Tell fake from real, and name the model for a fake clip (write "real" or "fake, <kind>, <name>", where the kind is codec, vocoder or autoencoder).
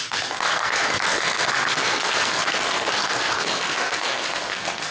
fake, codec, SNAC